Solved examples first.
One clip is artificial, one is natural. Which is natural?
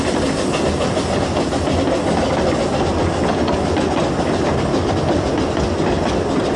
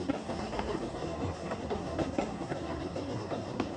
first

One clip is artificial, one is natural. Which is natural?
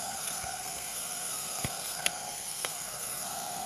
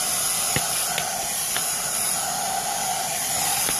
second